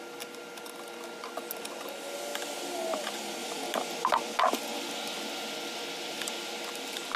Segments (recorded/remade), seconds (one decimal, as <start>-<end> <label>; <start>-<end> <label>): 0.0-7.2 recorded